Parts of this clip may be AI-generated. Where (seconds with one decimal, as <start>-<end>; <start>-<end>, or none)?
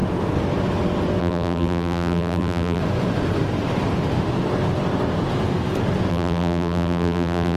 1.2-2.8; 6.1-7.6